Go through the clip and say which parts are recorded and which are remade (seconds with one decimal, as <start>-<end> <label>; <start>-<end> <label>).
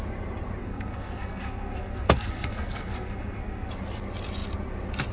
0.0-0.6 recorded; 0.6-3.7 remade; 3.7-5.1 recorded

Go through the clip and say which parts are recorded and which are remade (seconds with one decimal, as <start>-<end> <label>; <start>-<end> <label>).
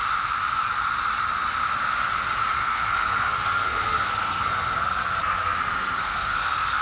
0.0-2.6 recorded; 2.6-6.8 remade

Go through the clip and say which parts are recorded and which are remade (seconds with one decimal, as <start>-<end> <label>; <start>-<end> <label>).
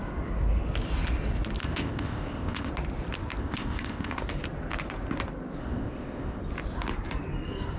0.0-1.6 recorded; 1.6-2.7 remade; 2.7-3.4 recorded; 3.4-4.2 remade; 4.2-5.6 recorded; 5.6-6.4 remade; 6.4-7.8 recorded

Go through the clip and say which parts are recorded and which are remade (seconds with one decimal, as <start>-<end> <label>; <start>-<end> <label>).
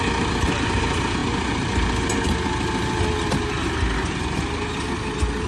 0.0-5.5 recorded